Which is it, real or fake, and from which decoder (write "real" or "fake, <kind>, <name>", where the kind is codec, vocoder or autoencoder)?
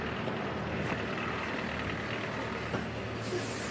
real